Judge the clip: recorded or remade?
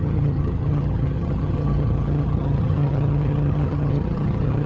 remade